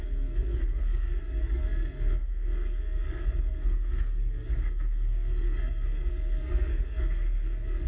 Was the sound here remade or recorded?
remade